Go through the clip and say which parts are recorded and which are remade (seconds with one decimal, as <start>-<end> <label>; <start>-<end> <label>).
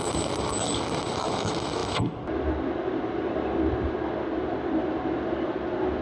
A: 0.0-6.0 recorded